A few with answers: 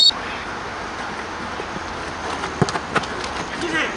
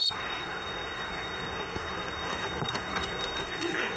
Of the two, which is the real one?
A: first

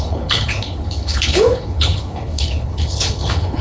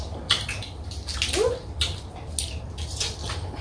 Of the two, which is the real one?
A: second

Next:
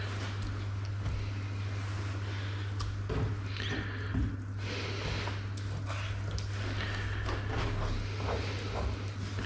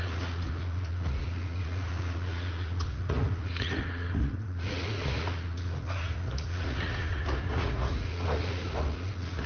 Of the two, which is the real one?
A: first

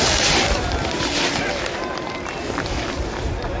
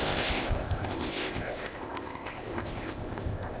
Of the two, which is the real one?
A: first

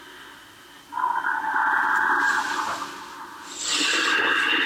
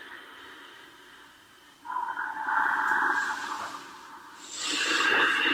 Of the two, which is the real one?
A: first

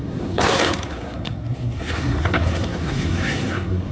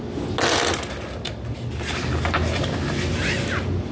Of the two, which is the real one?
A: second